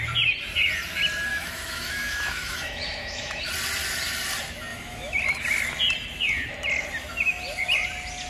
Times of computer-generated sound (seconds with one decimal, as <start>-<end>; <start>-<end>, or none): 1.3-3.5; 4.7-5.2